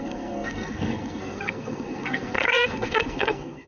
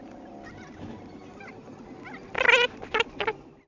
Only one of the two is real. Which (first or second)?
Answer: second